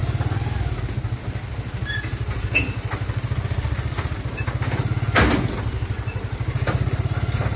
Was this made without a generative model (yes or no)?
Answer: yes